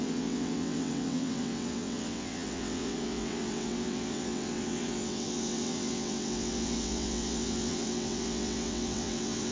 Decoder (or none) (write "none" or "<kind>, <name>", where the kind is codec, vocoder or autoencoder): vocoder, WaveNeXt